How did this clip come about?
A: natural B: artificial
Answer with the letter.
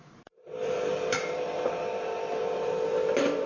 B